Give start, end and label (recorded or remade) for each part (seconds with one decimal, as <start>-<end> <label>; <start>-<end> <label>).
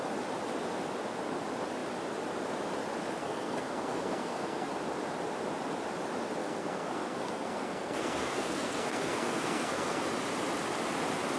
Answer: 0.0-3.2 recorded; 3.2-4.7 remade; 4.7-6.4 recorded; 6.4-10.0 remade; 10.0-11.4 recorded